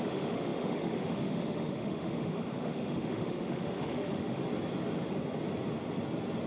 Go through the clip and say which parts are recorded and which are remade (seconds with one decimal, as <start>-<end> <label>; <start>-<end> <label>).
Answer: 0.0-4.4 remade; 4.4-6.5 recorded